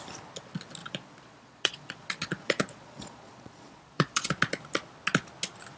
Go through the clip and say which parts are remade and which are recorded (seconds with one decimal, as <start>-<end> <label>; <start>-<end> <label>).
0.0-0.8 recorded; 0.8-4.3 remade; 4.3-5.8 recorded